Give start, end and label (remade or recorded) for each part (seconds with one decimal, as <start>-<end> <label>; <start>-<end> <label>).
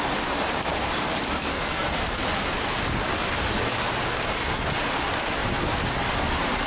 0.0-1.5 recorded; 1.5-2.0 remade; 2.0-6.7 recorded